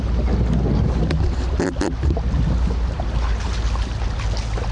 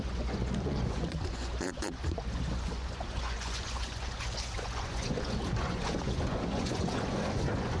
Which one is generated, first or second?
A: second